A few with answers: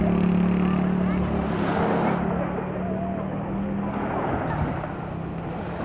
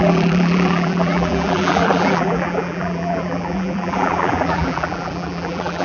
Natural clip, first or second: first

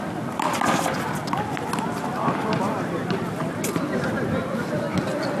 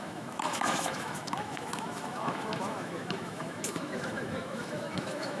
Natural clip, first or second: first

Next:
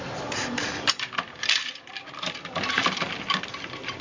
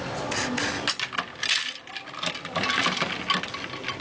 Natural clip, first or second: second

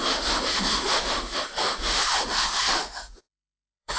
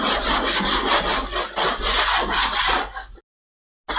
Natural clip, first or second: second